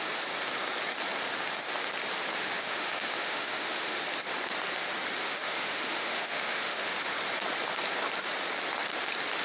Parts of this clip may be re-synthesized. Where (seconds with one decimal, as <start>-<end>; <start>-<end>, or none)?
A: 2.3-4.0; 5.2-6.9